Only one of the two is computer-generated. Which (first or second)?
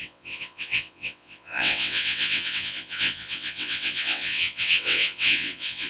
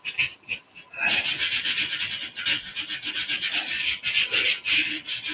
first